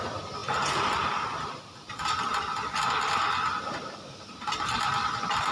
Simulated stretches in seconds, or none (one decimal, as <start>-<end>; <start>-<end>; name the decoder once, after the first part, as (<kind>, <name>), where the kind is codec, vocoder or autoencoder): 0.0-0.4 (vocoder, BigVGAN v2); 3.6-5.5